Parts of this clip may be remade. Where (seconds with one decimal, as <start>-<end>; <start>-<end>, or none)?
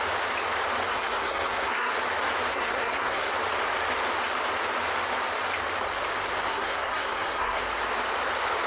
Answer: 0.9-1.9; 2.5-3.3; 6.5-7.6